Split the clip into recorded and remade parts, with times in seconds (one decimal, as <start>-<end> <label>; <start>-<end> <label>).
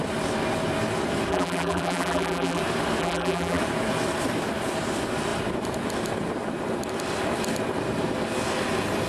0.0-1.3 recorded; 1.3-2.6 remade; 2.6-3.0 recorded; 3.0-3.6 remade; 3.6-9.1 recorded